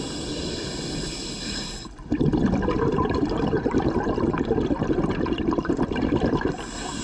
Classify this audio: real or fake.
real